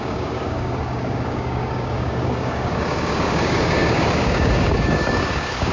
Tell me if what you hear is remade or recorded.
remade